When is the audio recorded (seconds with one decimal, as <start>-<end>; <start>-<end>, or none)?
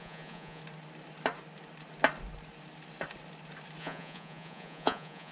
0.6-3.8